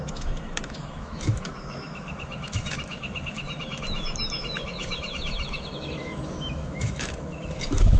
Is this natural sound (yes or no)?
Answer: no